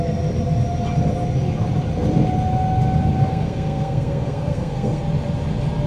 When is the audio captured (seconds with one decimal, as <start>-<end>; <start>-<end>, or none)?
0.0-3.3; 5.0-5.9